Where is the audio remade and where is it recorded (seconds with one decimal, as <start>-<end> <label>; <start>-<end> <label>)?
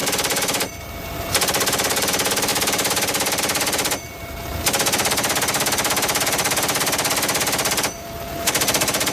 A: 0.0-9.1 remade